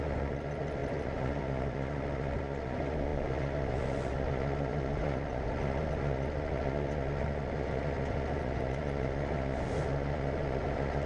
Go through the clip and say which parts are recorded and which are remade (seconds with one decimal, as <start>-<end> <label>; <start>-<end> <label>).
0.0-11.1 remade